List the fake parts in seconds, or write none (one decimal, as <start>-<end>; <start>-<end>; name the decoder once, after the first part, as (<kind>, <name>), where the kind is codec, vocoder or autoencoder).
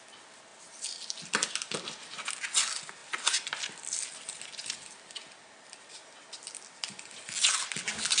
none